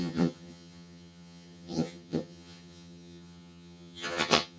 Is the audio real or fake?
fake